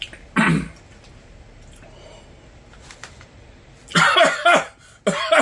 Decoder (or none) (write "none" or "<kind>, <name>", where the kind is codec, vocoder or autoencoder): none